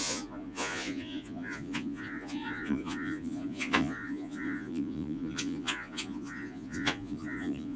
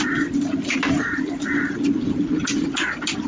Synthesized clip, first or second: first